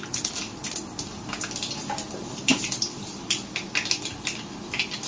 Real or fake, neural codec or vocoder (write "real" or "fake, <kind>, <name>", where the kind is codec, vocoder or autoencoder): real